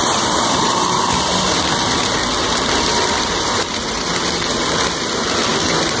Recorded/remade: remade